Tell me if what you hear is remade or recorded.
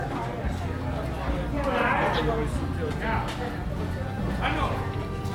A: recorded